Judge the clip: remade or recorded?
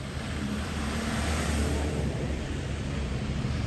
remade